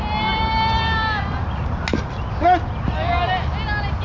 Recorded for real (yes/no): yes